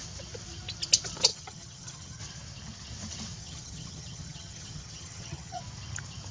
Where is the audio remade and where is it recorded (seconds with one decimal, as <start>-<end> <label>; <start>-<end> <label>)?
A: 0.0-1.3 recorded; 1.3-2.2 remade; 2.2-3.4 recorded; 3.4-5.6 remade; 5.6-6.3 recorded